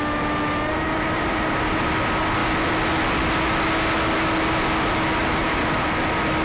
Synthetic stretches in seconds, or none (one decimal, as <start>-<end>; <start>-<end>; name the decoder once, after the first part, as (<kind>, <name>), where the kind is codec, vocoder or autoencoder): 0.7-1.9 (vocoder, BigVGAN v2); 5.2-6.0